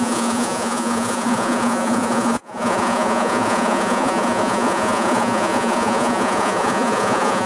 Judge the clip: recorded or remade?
remade